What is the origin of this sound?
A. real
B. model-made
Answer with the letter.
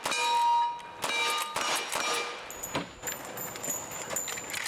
A